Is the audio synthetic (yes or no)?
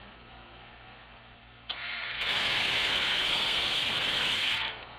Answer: yes